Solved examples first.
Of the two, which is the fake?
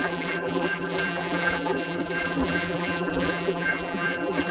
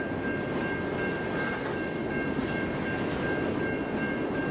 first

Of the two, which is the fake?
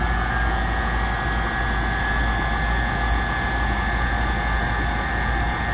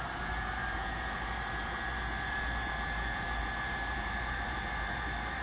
second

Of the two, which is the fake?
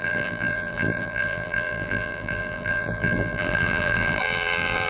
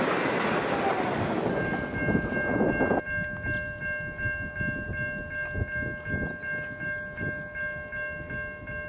first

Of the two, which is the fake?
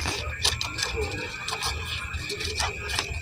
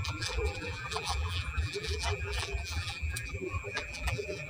second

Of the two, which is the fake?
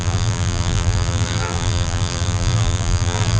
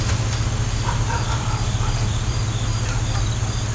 first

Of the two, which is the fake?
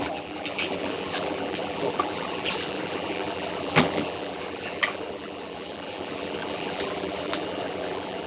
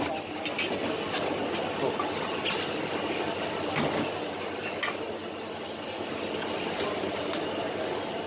first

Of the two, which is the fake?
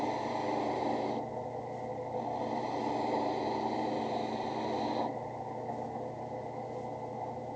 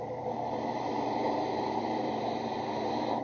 second